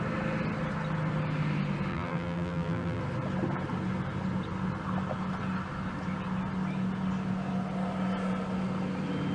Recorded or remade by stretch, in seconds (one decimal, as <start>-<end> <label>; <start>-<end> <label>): 0.0-1.9 recorded; 1.9-3.0 remade; 3.0-9.3 recorded